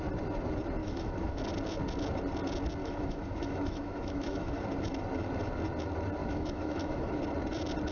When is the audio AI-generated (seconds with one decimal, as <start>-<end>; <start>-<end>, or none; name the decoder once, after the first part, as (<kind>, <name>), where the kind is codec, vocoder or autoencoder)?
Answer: 0.8-1.4 (autoencoder, DAC-VAE); 2.8-4.6; 6.2-7.2